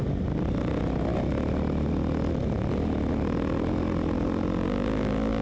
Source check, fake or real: real